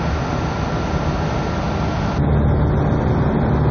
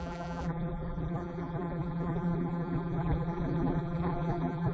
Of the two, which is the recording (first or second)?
first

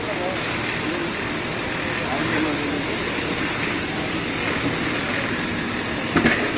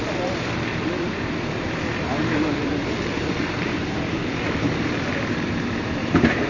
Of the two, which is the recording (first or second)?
first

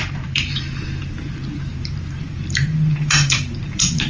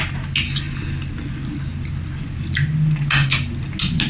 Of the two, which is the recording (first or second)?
second